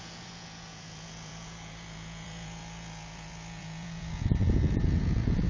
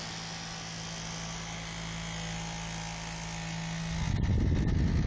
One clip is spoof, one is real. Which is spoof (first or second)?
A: first